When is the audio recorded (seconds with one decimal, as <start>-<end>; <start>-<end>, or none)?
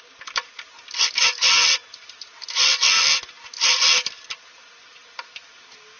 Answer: 0.0-6.0